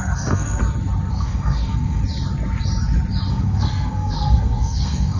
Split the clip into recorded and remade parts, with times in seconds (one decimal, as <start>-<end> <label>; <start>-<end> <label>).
0.0-0.6 remade; 0.6-1.1 recorded; 1.1-2.0 remade; 2.0-3.3 recorded; 3.3-5.2 remade